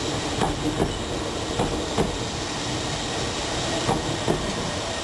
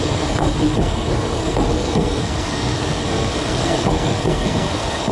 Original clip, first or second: first